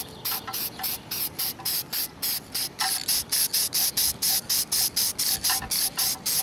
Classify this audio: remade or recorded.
recorded